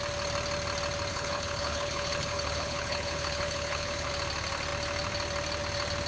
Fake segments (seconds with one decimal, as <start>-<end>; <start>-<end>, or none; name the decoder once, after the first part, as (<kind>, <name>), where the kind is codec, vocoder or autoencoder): 1.1-4.1 (codec, HILCodec)